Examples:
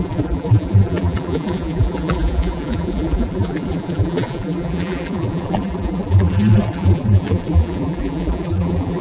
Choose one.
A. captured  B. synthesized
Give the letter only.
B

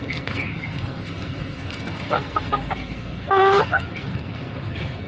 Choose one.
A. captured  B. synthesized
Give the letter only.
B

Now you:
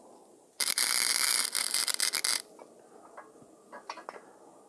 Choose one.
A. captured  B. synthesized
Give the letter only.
A